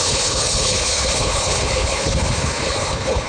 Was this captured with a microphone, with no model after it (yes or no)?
no